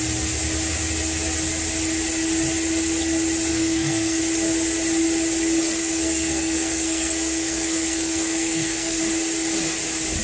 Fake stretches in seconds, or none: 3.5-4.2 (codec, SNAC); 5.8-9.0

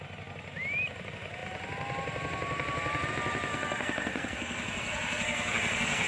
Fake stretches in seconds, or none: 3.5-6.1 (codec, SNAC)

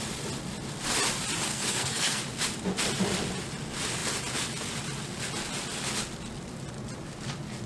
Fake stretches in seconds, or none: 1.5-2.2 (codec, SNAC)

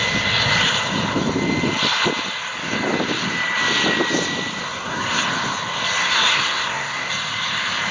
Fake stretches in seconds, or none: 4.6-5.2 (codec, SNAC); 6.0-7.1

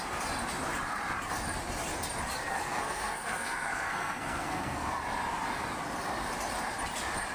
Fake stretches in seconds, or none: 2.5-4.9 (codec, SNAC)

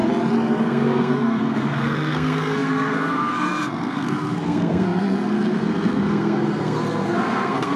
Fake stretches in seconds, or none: 0.6-7.8 (codec, SNAC)